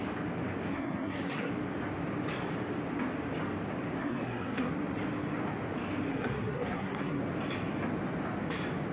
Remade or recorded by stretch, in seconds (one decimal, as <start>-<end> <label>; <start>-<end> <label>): 0.0-0.7 recorded; 0.7-1.5 remade; 1.5-4.0 recorded; 4.0-4.7 remade; 4.7-6.1 recorded; 6.1-7.2 remade; 7.2-8.9 recorded